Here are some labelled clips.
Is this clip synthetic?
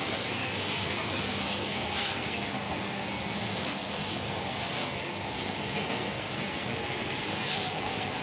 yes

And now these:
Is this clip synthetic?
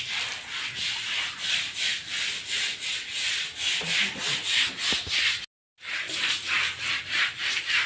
no